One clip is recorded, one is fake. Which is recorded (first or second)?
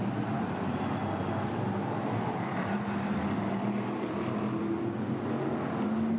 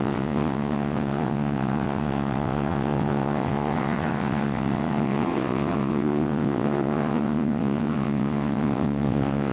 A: first